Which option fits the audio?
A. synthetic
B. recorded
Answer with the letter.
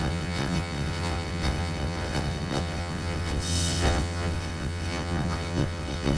A